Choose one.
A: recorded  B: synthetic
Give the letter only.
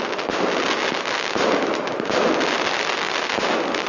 A